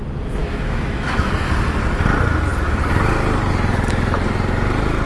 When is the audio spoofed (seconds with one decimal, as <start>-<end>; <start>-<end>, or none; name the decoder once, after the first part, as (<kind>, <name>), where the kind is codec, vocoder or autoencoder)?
0.4-1.3 (autoencoder, DAC-VAE)